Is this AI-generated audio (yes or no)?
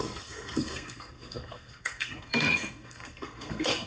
yes